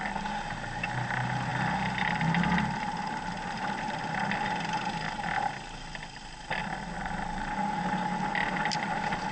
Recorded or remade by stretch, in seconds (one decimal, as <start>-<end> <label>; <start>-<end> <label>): 0.0-9.3 recorded